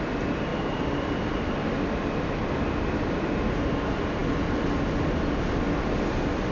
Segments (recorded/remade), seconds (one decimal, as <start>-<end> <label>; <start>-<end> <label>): 0.0-6.5 recorded